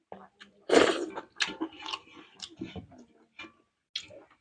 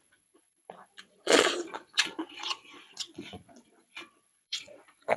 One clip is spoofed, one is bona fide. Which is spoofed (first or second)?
second